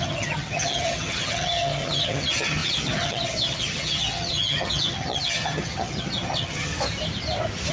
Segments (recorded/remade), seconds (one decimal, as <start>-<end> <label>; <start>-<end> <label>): 0.0-6.7 remade; 6.7-7.7 recorded